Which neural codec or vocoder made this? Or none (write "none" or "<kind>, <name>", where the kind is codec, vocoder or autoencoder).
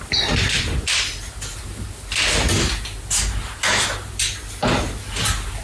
none